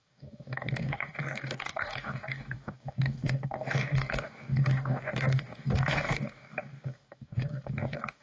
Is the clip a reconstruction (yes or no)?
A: yes